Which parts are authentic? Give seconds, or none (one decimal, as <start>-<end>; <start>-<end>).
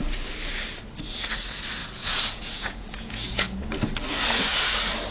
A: 0.0-1.8; 3.6-5.1